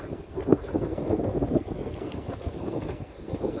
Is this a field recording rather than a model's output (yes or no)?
no